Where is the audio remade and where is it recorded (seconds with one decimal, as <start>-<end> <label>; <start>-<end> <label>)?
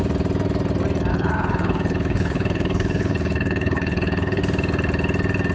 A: 0.0-1.1 recorded; 1.1-4.4 remade; 4.4-5.5 recorded